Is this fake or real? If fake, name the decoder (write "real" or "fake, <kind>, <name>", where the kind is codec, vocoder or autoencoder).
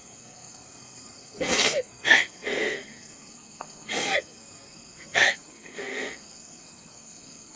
fake, codec, SNAC